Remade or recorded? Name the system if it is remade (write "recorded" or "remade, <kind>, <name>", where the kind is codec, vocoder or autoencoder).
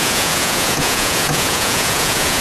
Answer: remade, vocoder, Vocos